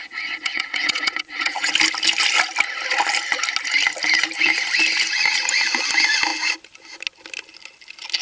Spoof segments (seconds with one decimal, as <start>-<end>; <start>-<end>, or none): 0.0-1.7